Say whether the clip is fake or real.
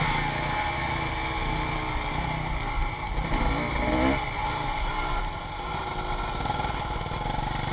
real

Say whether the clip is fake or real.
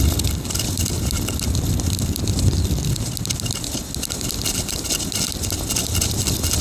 real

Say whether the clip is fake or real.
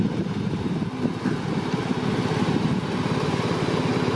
real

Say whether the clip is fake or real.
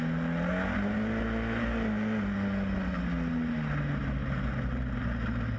real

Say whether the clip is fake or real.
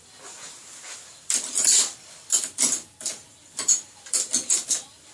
real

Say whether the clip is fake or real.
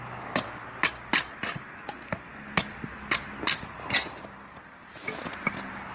real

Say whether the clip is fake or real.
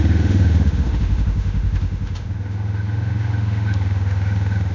fake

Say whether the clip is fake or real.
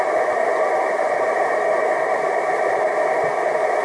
fake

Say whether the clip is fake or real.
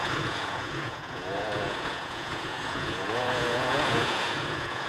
fake